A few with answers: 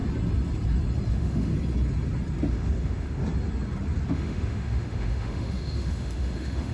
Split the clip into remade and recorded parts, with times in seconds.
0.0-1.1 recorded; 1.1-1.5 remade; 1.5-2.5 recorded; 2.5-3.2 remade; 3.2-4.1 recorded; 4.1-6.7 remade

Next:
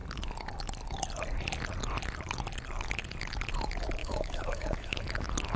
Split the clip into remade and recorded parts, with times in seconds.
0.0-4.0 recorded; 4.0-5.0 remade; 5.0-5.6 recorded

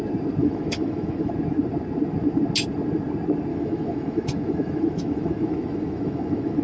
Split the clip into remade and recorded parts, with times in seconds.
0.0-0.4 recorded; 0.4-1.3 remade; 1.3-3.5 recorded; 3.5-6.6 remade

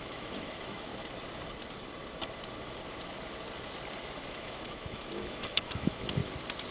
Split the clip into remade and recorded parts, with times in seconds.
0.0-0.9 remade; 0.9-4.3 recorded; 4.3-6.2 remade; 6.2-6.7 recorded

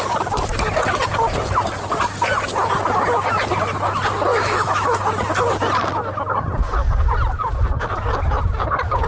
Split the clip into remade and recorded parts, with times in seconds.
0.0-4.3 recorded; 4.3-5.0 remade; 5.0-9.1 recorded

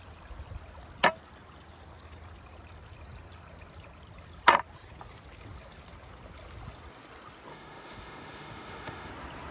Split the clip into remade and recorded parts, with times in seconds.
0.0-7.5 recorded; 7.5-9.1 remade; 9.1-9.5 recorded